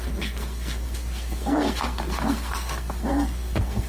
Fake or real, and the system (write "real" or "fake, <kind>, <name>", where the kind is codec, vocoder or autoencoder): fake, codec, SNAC